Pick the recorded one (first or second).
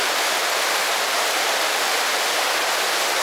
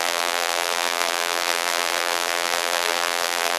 first